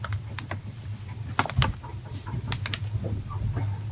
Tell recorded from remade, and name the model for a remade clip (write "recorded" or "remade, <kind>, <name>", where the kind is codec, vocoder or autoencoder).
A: recorded